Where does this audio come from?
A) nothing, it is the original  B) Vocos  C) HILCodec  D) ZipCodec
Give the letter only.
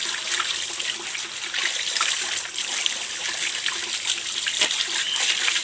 A